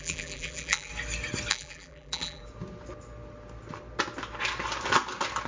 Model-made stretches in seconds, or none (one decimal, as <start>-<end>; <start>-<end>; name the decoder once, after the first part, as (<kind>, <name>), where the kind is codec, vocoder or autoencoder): 0.0-0.9 (vocoder, BigVGAN v2); 1.5-2.4